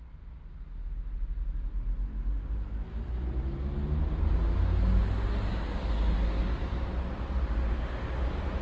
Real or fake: real